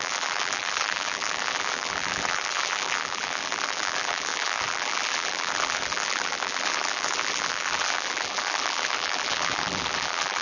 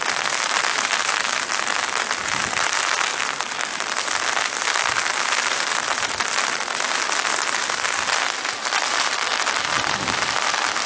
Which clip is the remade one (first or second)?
first